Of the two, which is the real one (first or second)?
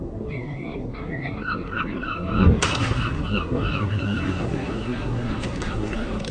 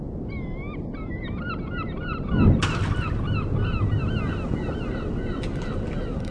second